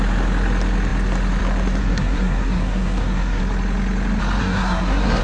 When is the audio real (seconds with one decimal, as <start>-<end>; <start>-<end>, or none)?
0.0-1.8; 3.4-4.4

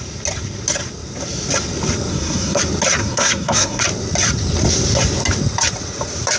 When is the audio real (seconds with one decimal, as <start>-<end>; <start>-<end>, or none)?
0.0-2.1; 2.6-3.0; 3.8-6.4

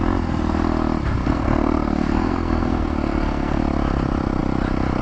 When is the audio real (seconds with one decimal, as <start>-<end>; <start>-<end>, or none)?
0.0-1.2; 3.6-5.0

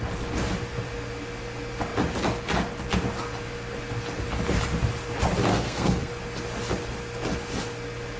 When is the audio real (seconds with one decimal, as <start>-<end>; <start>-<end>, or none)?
0.0-5.5; 6.1-8.2

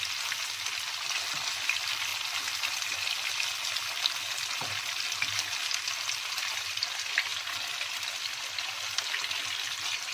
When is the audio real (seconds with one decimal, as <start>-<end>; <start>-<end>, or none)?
0.0-10.1

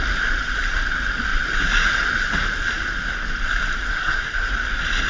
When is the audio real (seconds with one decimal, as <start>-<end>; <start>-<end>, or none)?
0.0-3.9; 4.5-5.1